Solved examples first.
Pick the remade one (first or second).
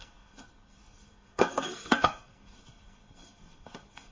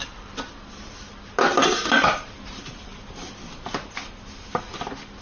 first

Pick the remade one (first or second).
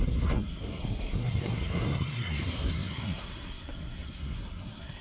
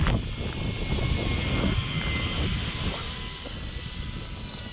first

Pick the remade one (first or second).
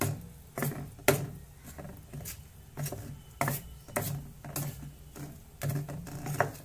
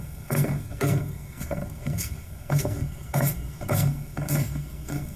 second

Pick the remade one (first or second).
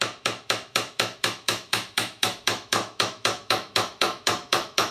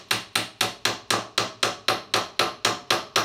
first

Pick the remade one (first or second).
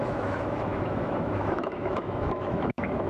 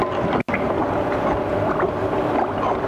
first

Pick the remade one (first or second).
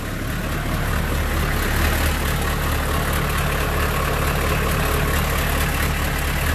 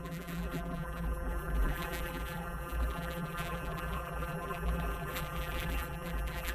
second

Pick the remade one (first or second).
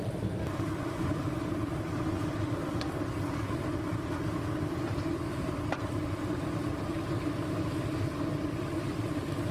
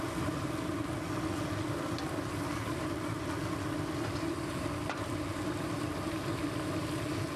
first